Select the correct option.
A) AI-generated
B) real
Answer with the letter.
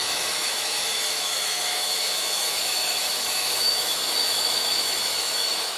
A